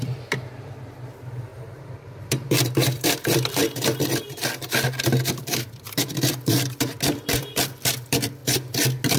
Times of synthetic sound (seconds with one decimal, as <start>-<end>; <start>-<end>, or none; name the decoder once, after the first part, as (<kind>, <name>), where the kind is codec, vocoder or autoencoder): 0.0-1.5 (vocoder, BigVGAN v2); 2.1-3.6; 5.4-8.4